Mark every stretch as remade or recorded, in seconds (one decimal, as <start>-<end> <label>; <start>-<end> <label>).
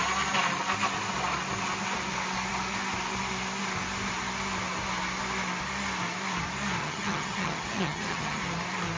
0.0-6.8 recorded; 6.8-8.4 remade; 8.4-9.0 recorded